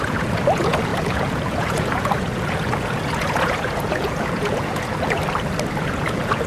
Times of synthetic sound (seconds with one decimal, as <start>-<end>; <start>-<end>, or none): 0.0-5.2; 5.8-6.5